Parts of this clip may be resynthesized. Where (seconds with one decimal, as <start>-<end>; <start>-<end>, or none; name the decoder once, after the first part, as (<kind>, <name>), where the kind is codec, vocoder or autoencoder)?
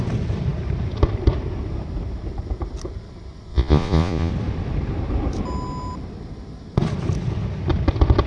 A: 3.5-4.3 (vocoder, Vocos)